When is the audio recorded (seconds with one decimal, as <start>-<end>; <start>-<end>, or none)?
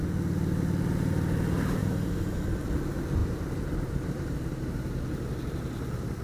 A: 0.0-1.8; 2.3-3.2; 5.0-6.2